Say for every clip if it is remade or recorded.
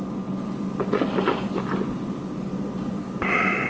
recorded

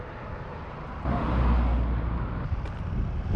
recorded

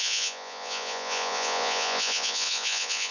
remade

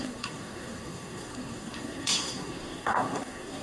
remade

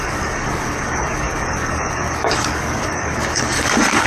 remade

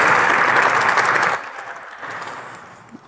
recorded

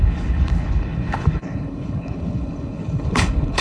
remade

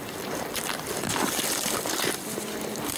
recorded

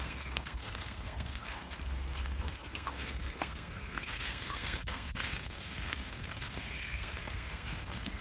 remade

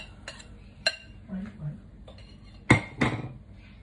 recorded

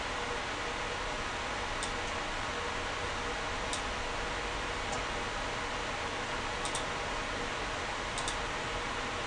recorded